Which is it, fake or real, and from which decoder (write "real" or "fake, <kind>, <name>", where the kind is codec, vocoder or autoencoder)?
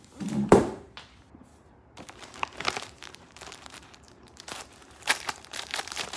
fake, vocoder, BigVGAN v2